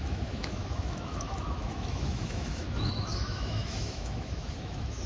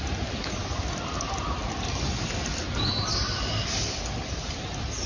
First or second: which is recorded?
second